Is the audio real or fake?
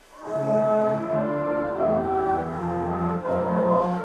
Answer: fake